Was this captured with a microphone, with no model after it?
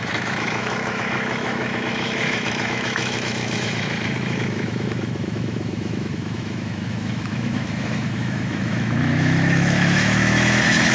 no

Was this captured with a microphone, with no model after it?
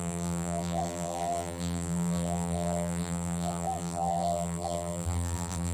no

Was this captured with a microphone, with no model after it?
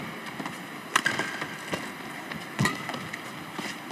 yes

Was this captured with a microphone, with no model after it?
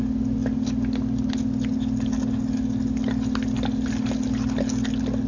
yes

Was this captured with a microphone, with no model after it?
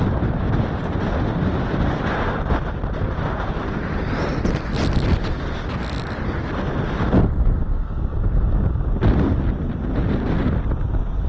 yes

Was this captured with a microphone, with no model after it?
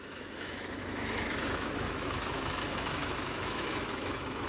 no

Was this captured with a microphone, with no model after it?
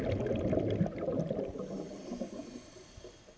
yes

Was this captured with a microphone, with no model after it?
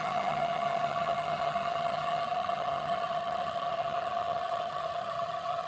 no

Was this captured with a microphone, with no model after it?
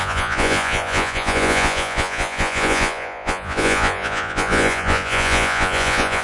no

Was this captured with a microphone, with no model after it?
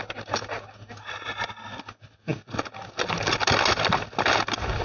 yes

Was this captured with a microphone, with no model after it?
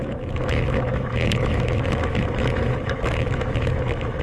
no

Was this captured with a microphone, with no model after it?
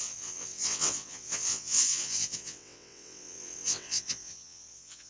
no